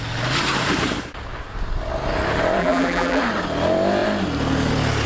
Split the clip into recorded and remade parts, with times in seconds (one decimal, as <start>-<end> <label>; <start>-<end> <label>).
0.0-2.6 recorded; 2.6-3.2 remade; 3.2-5.1 recorded